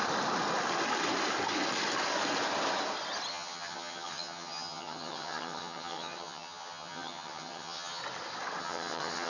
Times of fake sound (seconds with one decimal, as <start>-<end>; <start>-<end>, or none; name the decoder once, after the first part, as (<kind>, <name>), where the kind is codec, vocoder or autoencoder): 3.3-8.0 (vocoder, HiFi-GAN); 8.6-9.3